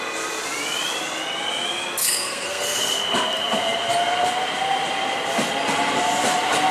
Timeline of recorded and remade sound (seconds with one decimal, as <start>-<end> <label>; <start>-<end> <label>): 0.0-2.0 recorded; 2.0-2.8 remade; 2.8-6.7 recorded